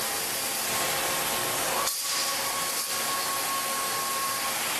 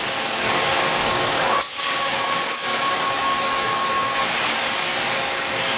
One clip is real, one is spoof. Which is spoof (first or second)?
second